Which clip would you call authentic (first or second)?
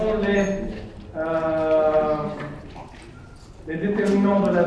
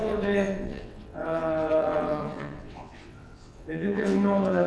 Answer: first